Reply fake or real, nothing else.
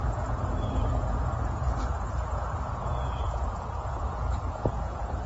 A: fake